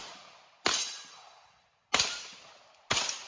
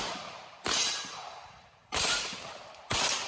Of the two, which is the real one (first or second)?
first